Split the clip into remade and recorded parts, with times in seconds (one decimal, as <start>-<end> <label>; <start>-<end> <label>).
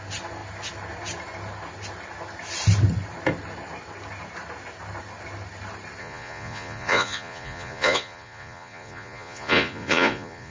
0.0-6.0 recorded; 6.0-10.5 remade